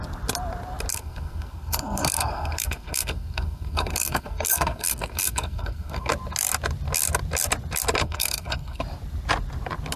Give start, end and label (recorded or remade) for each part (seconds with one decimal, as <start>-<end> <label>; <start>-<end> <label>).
0.0-0.9 recorded; 0.9-6.1 remade; 6.1-8.0 recorded; 8.0-8.8 remade; 8.8-10.0 recorded